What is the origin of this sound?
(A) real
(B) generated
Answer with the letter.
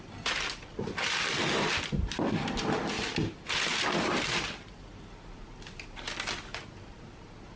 B